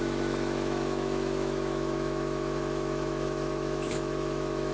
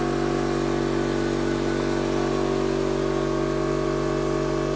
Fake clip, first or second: first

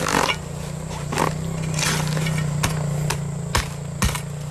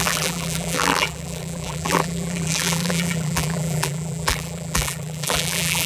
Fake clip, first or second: second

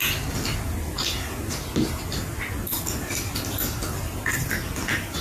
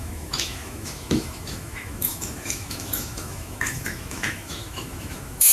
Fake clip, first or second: second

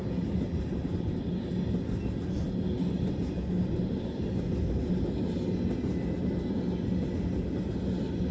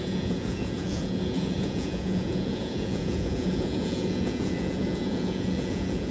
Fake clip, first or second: second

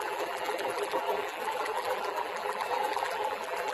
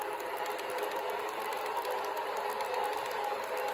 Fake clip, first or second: first